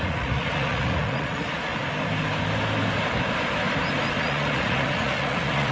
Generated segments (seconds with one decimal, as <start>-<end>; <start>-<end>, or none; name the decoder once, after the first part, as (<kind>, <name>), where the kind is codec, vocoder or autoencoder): 0.0-1.7 (vocoder, Vocos); 4.2-5.7